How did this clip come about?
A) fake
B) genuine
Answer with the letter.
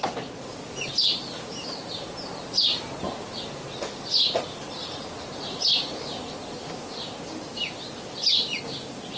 B